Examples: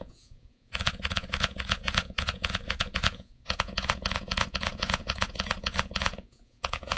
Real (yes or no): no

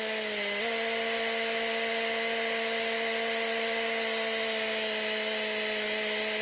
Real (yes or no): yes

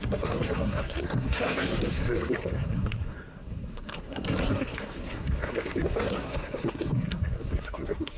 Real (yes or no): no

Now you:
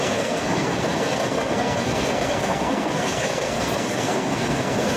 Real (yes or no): no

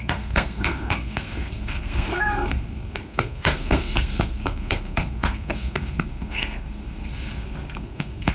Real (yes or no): no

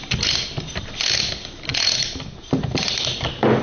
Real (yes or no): yes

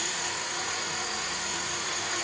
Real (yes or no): no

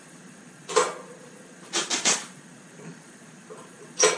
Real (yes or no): no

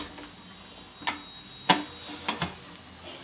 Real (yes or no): yes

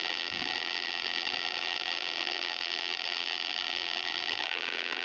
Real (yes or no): no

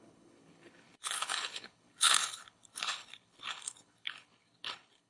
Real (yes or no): no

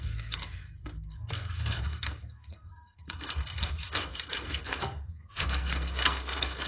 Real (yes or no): no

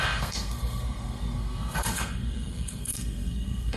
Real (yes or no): no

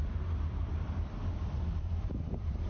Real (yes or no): no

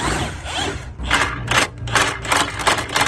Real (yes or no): yes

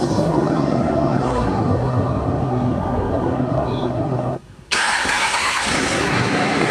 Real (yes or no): no